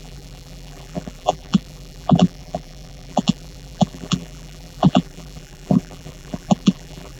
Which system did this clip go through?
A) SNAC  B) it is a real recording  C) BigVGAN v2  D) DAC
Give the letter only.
C